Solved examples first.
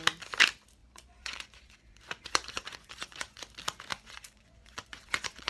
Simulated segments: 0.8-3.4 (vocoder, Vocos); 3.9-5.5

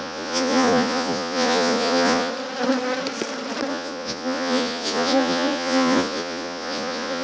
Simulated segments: 0.0-2.3 (vocoder, Vocos); 3.7-7.2

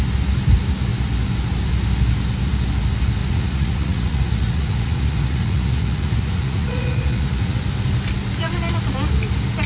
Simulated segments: 3.2-7.6 (vocoder, Vocos)

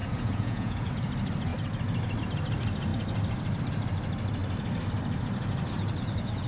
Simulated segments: 0.0-0.9 (vocoder, Vocos)

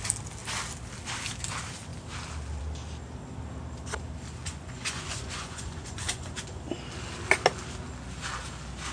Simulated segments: 4.3-6.6 (vocoder, Vocos)

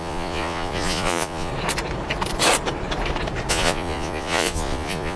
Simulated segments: 0.0-1.5 (vocoder, Vocos); 3.5-5.2

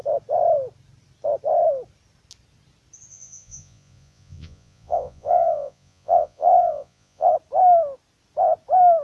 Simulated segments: 3.1-7.3 (vocoder, Vocos)

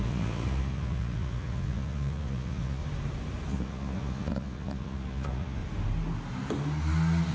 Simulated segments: 0.0-2.8 (vocoder, Vocos); 3.5-5.6